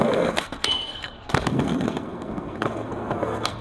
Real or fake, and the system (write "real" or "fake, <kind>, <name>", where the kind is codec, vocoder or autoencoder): fake, codec, SNAC